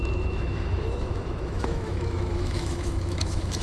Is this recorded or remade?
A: remade